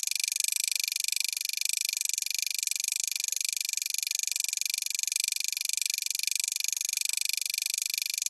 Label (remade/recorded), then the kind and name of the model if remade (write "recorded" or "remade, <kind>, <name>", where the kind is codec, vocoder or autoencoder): recorded